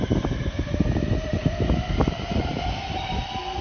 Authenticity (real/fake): real